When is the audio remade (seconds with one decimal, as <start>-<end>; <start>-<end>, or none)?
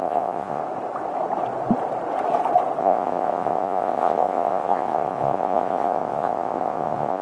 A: 0.0-0.6; 2.8-7.2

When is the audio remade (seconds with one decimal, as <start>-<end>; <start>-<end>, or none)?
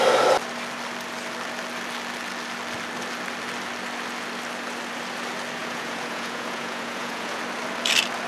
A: 5.6-7.4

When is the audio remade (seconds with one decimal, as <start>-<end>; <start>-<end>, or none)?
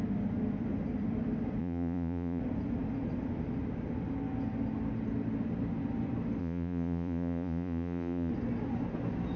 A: 1.6-2.4; 6.4-8.3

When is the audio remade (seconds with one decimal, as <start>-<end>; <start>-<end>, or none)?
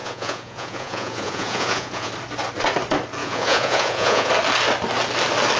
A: 0.0-2.1; 3.2-4.3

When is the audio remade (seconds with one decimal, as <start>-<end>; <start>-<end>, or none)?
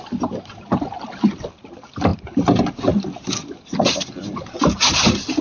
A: none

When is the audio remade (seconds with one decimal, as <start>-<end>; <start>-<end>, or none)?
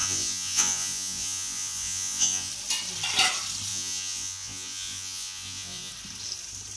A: 0.0-2.5; 3.7-5.9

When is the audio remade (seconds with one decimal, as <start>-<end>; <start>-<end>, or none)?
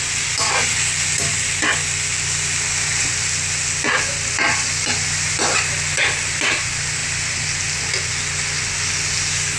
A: none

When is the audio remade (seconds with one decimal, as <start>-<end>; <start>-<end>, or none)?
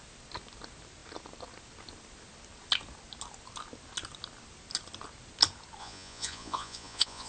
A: 5.8-7.3